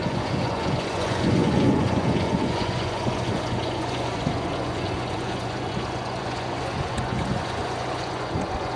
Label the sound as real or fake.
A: fake